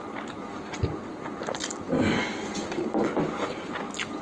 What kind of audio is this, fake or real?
real